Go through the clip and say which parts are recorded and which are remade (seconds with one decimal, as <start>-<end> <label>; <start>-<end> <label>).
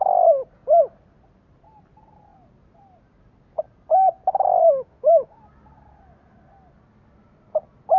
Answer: 0.0-4.6 recorded; 4.6-5.4 remade; 5.4-8.0 recorded